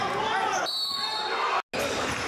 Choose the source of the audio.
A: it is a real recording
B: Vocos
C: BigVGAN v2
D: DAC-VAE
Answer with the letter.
A